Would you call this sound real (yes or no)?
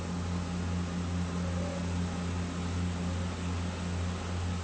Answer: yes